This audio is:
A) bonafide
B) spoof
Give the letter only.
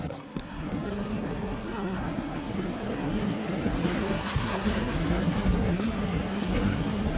B